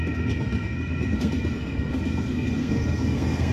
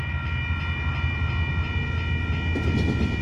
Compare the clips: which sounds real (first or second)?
second